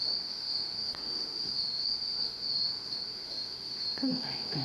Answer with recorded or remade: remade